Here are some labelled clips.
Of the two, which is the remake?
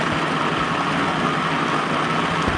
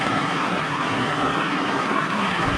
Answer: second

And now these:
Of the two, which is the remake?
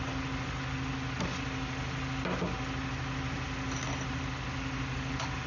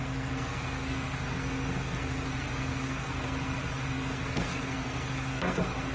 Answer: second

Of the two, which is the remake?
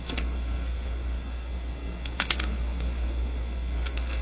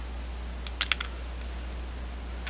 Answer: first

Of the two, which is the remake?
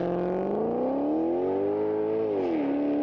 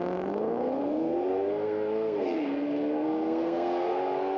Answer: second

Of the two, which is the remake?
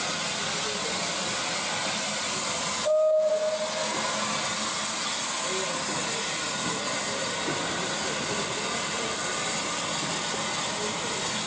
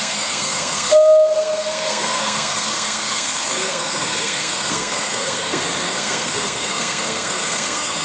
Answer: second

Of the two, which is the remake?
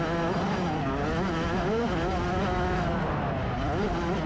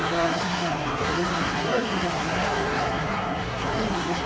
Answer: second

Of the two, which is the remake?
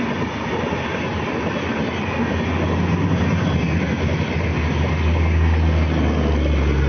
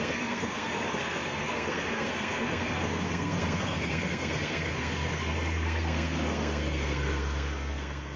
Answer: second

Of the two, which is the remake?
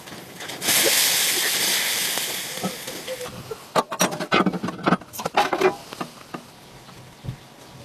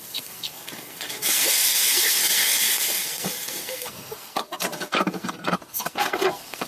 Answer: second